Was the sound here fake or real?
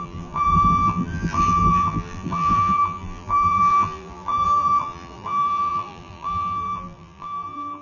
fake